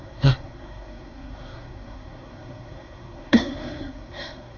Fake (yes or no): yes